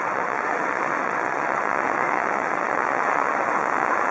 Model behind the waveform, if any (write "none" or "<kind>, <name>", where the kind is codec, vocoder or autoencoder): vocoder, WaveNeXt